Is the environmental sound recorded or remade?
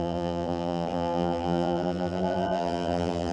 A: remade